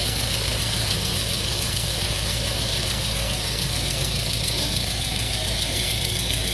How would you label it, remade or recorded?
remade